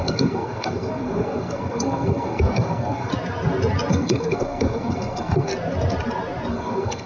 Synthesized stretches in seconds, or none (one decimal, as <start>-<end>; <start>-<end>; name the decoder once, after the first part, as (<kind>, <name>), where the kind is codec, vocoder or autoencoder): 0.0-3.1 (codec, SNAC); 3.9-5.5; 6.5-7.1